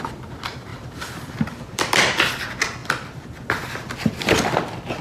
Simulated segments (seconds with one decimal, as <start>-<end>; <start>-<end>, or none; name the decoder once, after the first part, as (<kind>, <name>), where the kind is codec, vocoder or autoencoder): 0.7-2.3 (vocoder, BigVGAN v2); 2.8-3.4